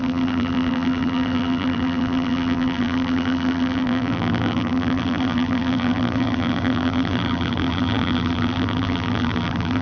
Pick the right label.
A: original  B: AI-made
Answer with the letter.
B